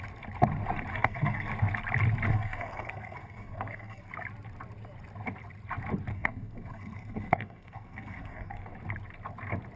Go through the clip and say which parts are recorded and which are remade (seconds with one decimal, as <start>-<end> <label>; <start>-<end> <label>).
0.0-0.9 recorded; 0.9-1.5 remade; 1.5-2.3 recorded; 2.3-4.1 remade; 4.1-6.1 recorded; 6.1-8.7 remade; 8.7-9.8 recorded